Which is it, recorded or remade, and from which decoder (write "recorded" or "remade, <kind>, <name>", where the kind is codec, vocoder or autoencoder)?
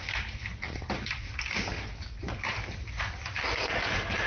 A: recorded